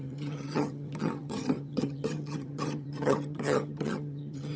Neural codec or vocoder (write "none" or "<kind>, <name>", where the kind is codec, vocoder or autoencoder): vocoder, HiFi-GAN